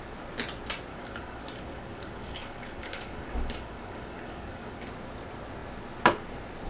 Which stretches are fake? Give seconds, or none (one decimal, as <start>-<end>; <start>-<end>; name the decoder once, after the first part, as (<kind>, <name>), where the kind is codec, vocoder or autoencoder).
0.9-4.9 (codec, DAC)

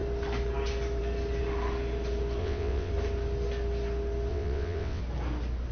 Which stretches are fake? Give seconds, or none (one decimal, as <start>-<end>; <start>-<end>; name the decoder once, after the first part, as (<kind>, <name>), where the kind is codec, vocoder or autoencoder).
2.4-2.9 (vocoder, WaveNeXt); 4.3-5.0